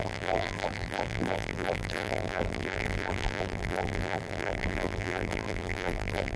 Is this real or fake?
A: fake